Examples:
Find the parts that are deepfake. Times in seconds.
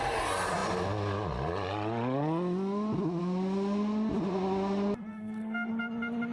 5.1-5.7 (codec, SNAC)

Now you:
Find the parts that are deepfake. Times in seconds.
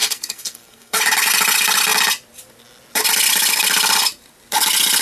0.0-1.0 (codec, SNAC)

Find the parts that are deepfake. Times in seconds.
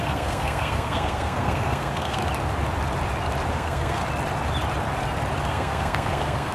0.0-2.2 (codec, SNAC); 3.5-4.0; 5.5-6.5